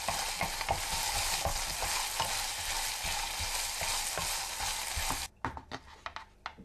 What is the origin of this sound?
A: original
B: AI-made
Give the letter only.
A